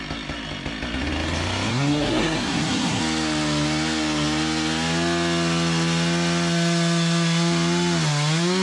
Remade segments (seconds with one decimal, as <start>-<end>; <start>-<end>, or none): 1.7-3.0